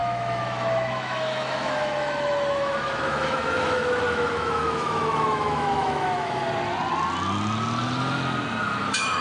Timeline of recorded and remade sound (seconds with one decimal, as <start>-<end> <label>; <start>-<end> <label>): 0.0-6.4 remade; 6.4-8.6 recorded; 8.6-9.2 remade